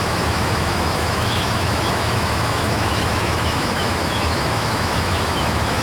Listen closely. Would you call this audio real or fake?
fake